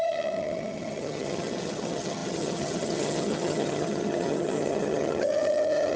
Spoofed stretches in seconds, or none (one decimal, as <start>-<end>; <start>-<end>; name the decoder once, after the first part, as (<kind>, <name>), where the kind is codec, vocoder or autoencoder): 0.0-6.0 (vocoder, HiFi-GAN)